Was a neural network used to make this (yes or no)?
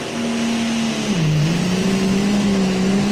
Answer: no